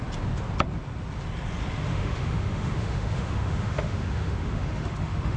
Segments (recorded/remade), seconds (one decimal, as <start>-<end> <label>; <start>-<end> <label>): 0.0-1.9 recorded; 1.9-5.4 remade